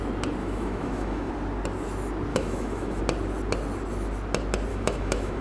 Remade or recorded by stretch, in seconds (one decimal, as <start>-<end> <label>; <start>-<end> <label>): 0.0-0.4 recorded; 0.4-1.3 remade; 1.3-2.3 recorded; 2.3-3.0 remade; 3.0-4.7 recorded; 4.7-5.4 remade

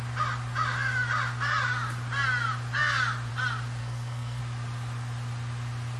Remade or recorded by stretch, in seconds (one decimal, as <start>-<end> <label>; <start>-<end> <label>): 0.0-3.8 recorded; 3.8-4.4 remade; 4.4-6.0 recorded